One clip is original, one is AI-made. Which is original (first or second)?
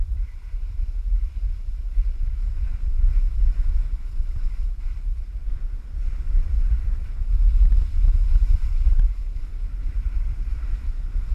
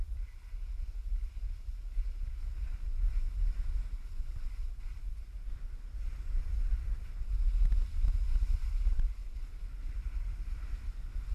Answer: second